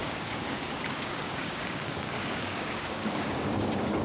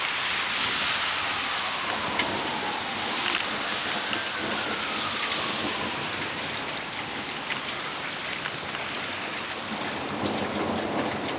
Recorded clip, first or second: second